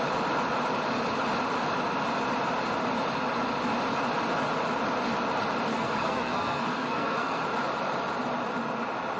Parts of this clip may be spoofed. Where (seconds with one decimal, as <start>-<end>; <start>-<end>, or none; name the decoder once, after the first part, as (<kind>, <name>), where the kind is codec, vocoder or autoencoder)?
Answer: 5.7-7.4 (codec, SNAC)